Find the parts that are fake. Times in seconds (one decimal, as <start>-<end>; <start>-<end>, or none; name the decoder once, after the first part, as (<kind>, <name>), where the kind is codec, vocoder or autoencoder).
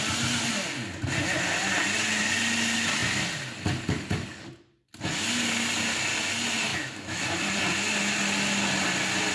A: 6.7-7.2 (autoencoder, DAC-VAE)